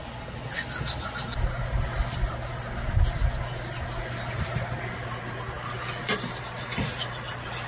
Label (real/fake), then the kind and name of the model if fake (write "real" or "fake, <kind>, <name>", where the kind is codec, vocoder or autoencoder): real